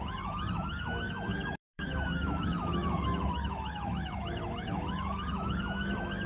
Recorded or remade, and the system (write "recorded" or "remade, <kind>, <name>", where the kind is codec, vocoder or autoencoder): remade, autoencoder, DAC-VAE